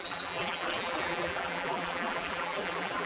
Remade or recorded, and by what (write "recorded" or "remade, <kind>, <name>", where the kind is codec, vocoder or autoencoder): remade, vocoder, BigVGAN v2